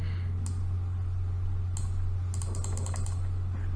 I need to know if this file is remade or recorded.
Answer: recorded